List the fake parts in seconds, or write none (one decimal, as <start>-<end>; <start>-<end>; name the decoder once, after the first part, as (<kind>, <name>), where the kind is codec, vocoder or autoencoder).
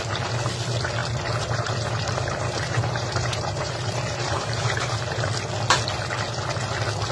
1.0-5.3 (vocoder, BigVGAN v2)